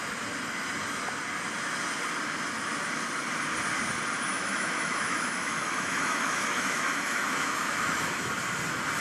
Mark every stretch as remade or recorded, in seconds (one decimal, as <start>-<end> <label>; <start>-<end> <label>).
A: 0.0-4.3 recorded; 4.3-8.3 remade; 8.3-9.0 recorded